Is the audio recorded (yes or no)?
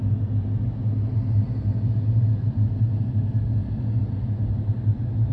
yes